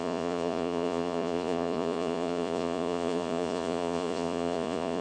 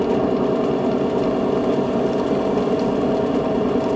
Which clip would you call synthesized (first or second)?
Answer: first